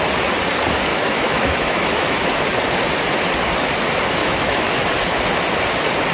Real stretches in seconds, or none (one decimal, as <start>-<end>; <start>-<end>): 0.0-0.9; 2.4-4.2; 4.9-6.1